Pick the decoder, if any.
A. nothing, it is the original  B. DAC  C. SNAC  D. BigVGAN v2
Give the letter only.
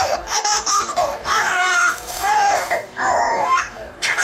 B